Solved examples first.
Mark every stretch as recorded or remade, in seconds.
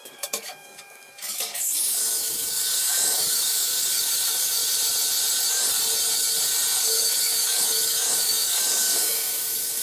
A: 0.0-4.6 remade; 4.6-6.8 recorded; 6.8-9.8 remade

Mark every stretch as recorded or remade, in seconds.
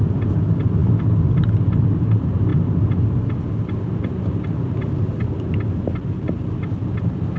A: 0.0-7.4 recorded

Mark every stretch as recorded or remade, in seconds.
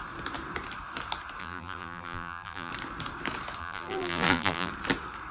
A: 0.0-1.4 recorded; 1.4-2.7 remade; 2.7-3.6 recorded; 3.6-4.7 remade; 4.7-5.3 recorded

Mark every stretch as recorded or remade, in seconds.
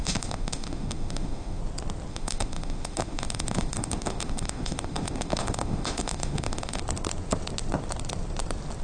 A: 0.0-1.6 remade; 1.6-2.1 recorded; 2.1-6.8 remade; 6.8-8.8 recorded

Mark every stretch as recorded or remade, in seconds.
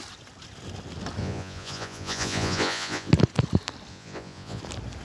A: 0.0-1.2 recorded; 1.2-3.1 remade; 3.1-3.9 recorded; 3.9-4.6 remade; 4.6-5.0 recorded